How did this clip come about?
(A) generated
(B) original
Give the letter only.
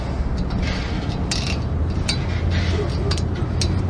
B